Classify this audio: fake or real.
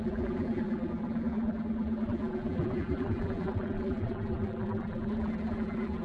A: fake